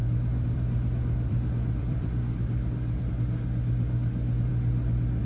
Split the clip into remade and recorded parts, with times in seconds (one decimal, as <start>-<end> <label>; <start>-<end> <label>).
0.0-3.1 remade; 3.1-5.2 recorded